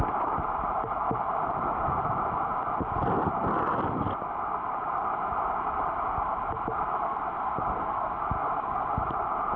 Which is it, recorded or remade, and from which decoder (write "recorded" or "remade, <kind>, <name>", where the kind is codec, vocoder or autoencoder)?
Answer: recorded